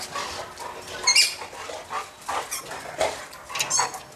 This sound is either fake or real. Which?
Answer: real